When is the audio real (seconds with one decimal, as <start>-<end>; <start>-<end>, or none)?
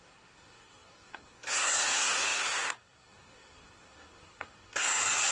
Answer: none